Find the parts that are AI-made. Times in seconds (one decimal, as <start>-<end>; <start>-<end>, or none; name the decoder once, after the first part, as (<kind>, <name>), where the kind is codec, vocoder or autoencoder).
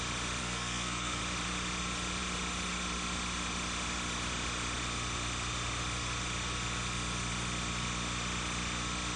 0.4-1.2 (codec, SNAC)